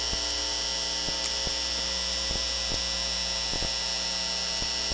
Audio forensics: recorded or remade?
recorded